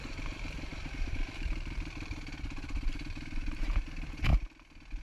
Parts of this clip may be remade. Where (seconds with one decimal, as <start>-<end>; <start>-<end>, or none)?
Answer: 0.0-4.3